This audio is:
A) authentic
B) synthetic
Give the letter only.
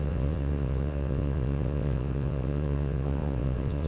B